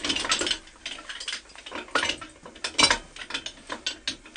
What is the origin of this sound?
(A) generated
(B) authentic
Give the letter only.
B